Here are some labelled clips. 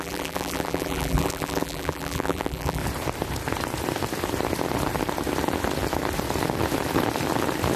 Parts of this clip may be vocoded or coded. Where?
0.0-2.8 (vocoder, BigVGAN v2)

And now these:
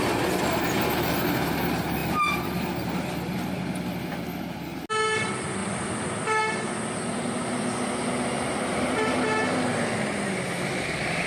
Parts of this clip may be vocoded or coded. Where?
5.6-6.4 (vocoder, BigVGAN v2)

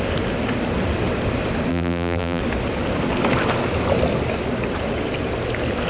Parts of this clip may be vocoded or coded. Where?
1.7-2.4 (vocoder, BigVGAN v2)

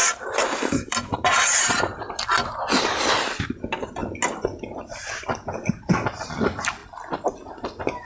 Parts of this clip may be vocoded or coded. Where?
0.0-1.8 (vocoder, BigVGAN v2)

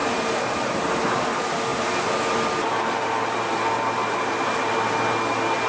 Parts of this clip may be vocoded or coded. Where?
none

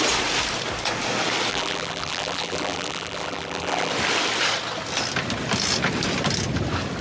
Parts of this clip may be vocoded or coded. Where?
1.5-3.9 (vocoder, BigVGAN v2)

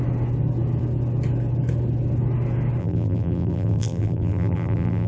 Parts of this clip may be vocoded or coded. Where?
2.8-5.1 (vocoder, BigVGAN v2)